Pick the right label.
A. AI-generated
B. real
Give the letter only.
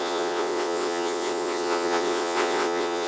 A